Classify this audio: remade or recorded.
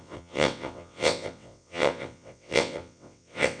remade